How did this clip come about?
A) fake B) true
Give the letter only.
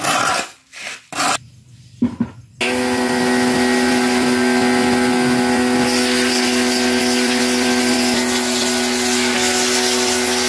B